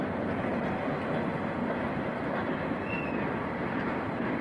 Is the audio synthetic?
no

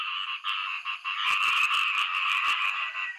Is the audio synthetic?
yes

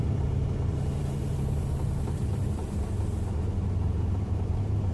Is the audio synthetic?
yes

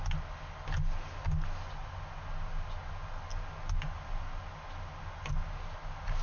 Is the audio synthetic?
no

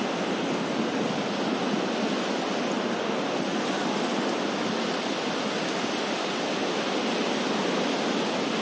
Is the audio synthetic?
no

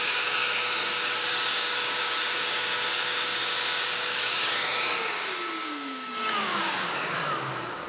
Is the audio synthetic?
yes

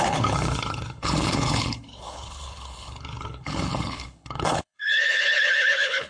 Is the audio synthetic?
yes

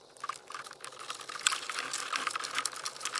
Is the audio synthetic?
no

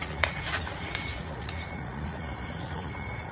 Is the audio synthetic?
yes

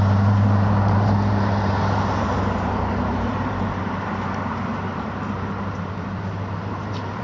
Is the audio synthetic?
yes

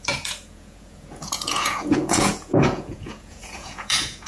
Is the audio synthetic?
yes